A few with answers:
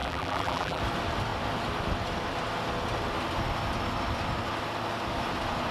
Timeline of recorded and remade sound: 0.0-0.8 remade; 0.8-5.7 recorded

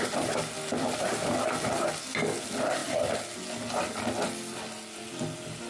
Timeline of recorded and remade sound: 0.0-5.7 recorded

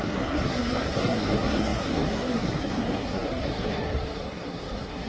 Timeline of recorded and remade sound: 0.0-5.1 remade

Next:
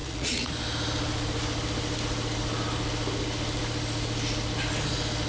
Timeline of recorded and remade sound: 0.0-0.5 remade; 0.5-5.3 recorded

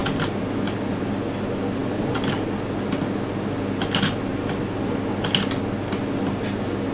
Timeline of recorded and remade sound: 0.0-1.8 recorded; 1.8-2.3 remade; 2.3-6.9 recorded